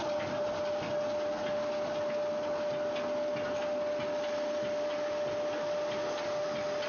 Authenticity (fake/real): real